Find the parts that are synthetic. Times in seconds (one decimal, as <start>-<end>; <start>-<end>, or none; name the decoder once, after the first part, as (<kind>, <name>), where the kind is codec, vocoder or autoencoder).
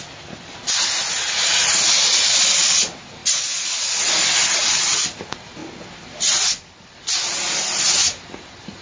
none